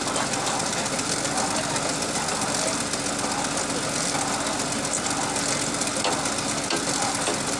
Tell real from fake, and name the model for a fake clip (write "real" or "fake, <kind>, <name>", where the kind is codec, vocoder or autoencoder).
real